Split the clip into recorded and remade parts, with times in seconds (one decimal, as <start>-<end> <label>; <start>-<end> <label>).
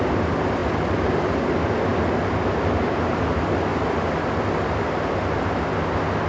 0.0-0.6 recorded; 0.6-1.2 remade; 1.2-1.9 recorded; 1.9-3.3 remade; 3.3-3.7 recorded; 3.7-4.3 remade; 4.3-6.3 recorded